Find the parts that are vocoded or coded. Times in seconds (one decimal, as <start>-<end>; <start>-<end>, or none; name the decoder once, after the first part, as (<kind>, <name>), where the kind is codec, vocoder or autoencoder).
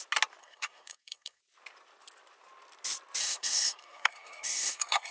0.4-1.4 (codec, SNAC); 3.2-5.1